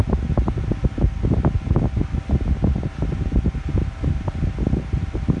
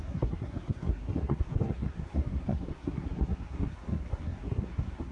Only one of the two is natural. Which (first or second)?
first